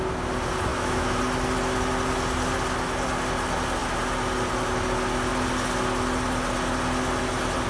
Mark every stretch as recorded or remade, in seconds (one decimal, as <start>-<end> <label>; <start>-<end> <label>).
0.0-0.7 recorded; 0.7-1.2 remade; 1.2-7.7 recorded